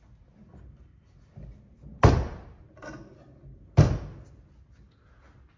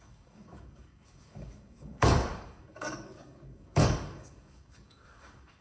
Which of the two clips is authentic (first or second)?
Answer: first